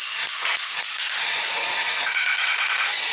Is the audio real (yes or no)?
no